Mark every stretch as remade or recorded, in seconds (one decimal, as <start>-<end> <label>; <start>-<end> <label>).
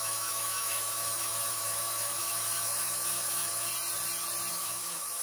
0.0-3.7 remade; 3.7-4.5 recorded; 4.5-5.2 remade